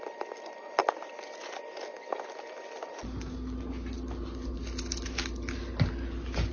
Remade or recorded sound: recorded